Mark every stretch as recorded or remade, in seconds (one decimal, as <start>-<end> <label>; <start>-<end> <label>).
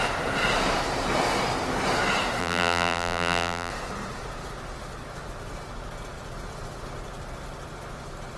0.0-2.4 recorded; 2.4-3.7 remade; 3.7-8.4 recorded